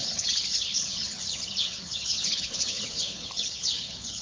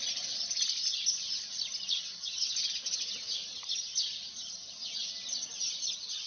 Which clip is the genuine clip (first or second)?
second